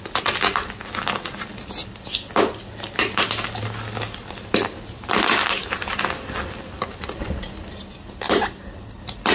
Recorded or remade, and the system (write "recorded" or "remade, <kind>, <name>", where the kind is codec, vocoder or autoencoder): recorded